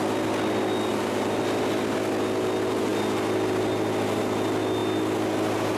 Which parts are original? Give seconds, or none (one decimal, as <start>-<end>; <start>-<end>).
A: 0.0-0.9; 1.4-5.8